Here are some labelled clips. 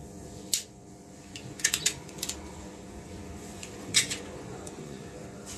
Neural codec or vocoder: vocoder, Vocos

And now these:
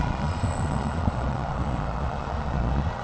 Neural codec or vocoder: vocoder, Vocos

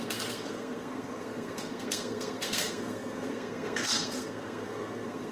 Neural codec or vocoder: codec, SNAC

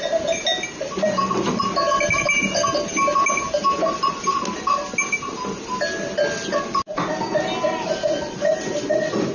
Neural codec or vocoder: none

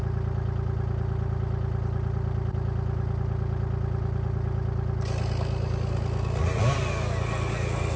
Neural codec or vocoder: none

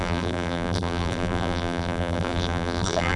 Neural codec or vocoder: vocoder, BigVGAN v2